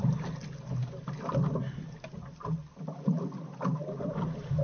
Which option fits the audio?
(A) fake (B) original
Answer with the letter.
B